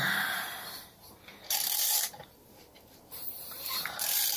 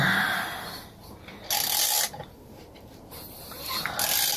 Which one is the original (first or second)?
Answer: second